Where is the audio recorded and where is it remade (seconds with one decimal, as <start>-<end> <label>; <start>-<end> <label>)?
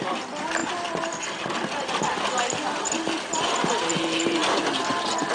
0.0-5.3 recorded